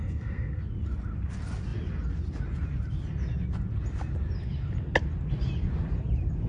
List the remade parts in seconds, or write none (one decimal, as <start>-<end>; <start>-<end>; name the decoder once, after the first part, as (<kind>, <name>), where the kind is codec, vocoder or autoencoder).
0.0-0.6 (codec, SNAC)